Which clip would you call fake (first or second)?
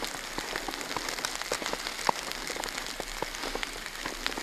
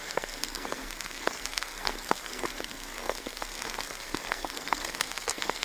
second